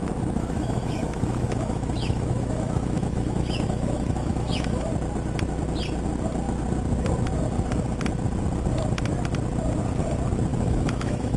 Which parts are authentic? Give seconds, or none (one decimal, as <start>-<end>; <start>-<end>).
4.9-10.5